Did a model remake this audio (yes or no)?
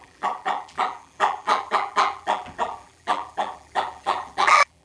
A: yes